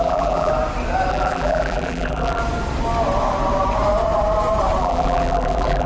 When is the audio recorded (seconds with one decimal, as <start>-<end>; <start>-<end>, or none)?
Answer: 0.5-1.1; 2.4-4.8